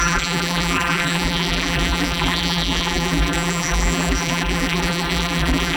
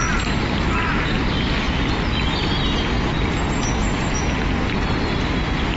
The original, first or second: second